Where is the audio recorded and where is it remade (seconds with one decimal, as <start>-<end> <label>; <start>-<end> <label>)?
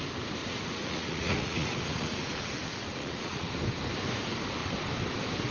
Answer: 0.0-0.4 recorded; 0.4-3.5 remade; 3.5-5.5 recorded